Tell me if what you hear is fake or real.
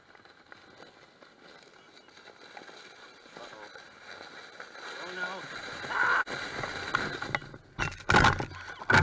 real